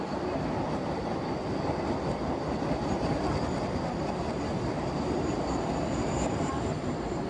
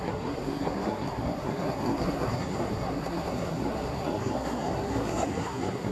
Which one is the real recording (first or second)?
first